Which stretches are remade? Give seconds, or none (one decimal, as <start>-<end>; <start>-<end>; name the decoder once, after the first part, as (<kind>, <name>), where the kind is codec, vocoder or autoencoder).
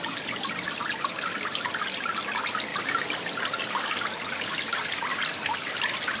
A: 5.1-5.7 (vocoder, BigVGAN v2)